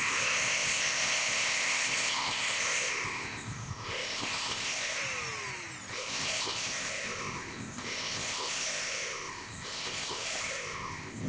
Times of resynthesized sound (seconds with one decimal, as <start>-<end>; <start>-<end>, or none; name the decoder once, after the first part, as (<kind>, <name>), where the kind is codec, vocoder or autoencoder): 0.0-5.0 (codec, ZipCodec); 5.9-11.3